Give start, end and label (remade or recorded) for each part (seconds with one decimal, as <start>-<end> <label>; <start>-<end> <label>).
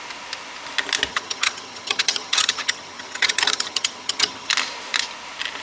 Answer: 0.0-1.1 recorded; 1.1-4.5 remade; 4.5-5.6 recorded